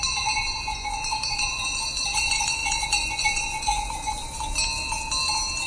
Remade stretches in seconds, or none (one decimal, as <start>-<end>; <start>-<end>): 0.0-4.5